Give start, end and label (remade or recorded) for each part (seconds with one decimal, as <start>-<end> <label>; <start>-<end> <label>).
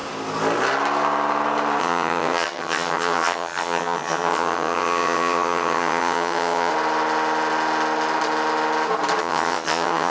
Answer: 0.0-1.8 recorded; 1.8-6.7 remade; 6.7-9.2 recorded; 9.2-10.1 remade